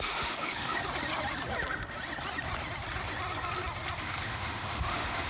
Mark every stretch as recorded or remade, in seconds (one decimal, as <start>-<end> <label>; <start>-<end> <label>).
0.0-0.8 remade; 0.8-4.0 recorded; 4.0-5.3 remade